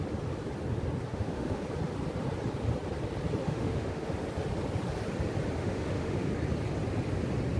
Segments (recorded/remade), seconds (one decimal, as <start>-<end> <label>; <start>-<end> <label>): 0.0-1.1 recorded; 1.1-1.6 remade; 1.6-3.4 recorded; 3.4-4.1 remade; 4.1-5.6 recorded; 5.6-6.3 remade; 6.3-7.6 recorded